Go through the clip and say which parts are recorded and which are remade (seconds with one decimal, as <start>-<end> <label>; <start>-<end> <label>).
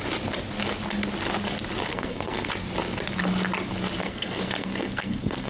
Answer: 0.0-1.9 recorded; 1.9-2.5 remade; 2.5-4.0 recorded; 4.0-5.5 remade